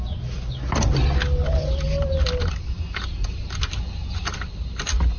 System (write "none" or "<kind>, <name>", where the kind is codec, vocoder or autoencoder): none